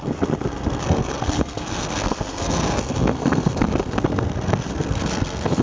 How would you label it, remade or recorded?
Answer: remade